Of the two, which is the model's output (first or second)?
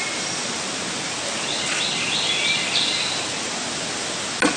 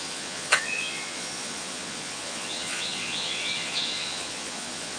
second